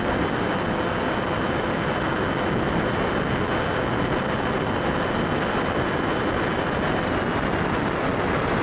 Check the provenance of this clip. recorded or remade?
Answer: recorded